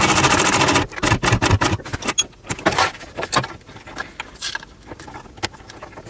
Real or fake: real